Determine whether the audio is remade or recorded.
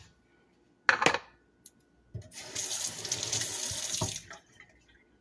recorded